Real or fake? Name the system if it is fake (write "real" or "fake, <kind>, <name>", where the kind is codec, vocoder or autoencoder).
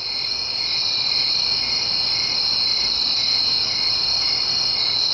real